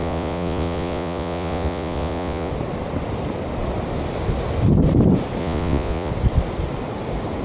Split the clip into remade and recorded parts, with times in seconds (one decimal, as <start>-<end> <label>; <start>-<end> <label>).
0.0-2.5 remade; 2.5-5.4 recorded; 5.4-6.1 remade; 6.1-7.4 recorded